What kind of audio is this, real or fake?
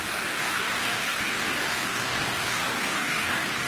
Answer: fake